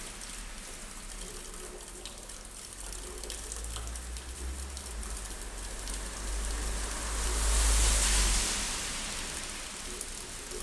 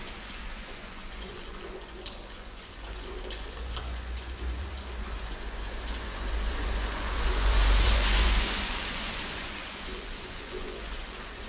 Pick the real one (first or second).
first